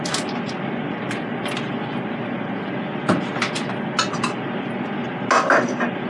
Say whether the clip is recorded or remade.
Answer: recorded